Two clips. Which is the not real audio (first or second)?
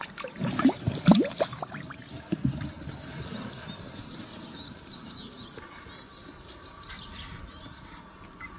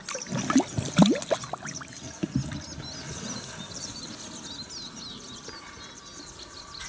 first